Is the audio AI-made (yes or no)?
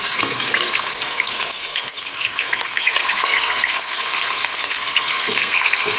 yes